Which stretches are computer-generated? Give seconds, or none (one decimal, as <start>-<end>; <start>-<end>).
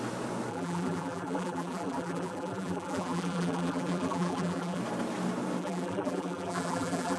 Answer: 0.5-4.8; 5.6-7.2